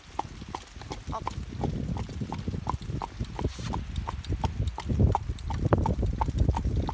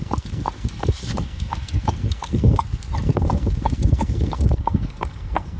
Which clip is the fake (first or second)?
second